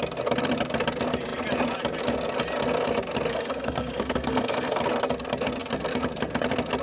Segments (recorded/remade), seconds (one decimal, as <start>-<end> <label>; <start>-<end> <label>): 0.0-3.3 recorded; 3.3-4.8 remade; 4.8-6.8 recorded